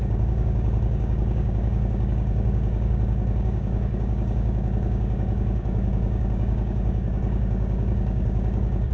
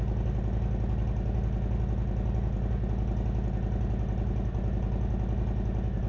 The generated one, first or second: first